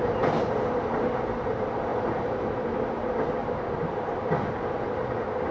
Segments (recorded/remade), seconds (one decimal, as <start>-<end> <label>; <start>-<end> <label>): 0.0-1.9 recorded; 1.9-2.6 remade; 2.6-3.4 recorded; 3.4-4.3 remade; 4.3-5.5 recorded